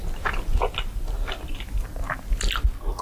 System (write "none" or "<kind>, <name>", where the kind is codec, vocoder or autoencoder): none